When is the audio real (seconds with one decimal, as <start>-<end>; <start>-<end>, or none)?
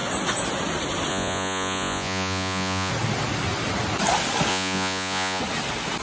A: 0.0-1.1; 2.9-4.5; 5.4-6.0